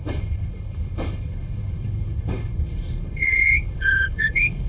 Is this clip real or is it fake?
fake